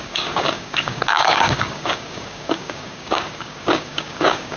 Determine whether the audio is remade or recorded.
remade